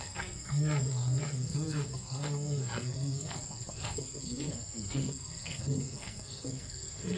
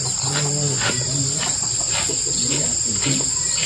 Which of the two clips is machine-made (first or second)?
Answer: first